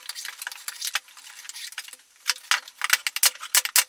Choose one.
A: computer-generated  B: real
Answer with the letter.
B